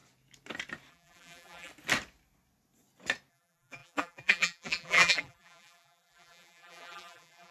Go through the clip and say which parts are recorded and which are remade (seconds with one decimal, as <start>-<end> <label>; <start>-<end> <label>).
0.0-0.9 recorded; 0.9-1.7 remade; 1.7-3.3 recorded; 3.3-7.5 remade